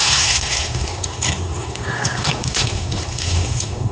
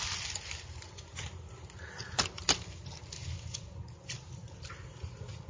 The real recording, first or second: second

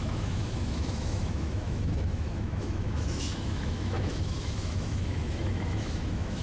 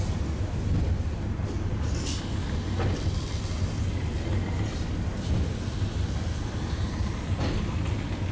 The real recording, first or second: second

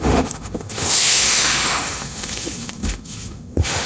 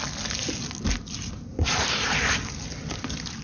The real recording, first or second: second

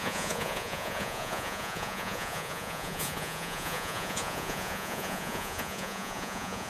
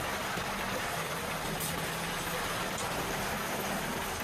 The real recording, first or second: second